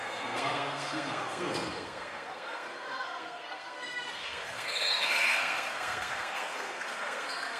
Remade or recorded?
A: remade